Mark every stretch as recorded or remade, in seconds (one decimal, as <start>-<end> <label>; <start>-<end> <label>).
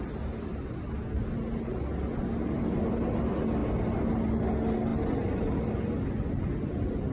0.0-7.1 recorded